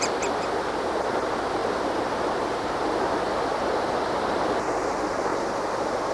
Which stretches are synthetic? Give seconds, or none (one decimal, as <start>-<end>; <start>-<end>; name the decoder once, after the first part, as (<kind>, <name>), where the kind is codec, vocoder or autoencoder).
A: 0.0-6.1 (vocoder, BigVGAN v2)